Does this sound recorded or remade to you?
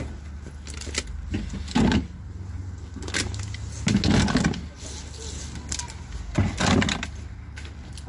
recorded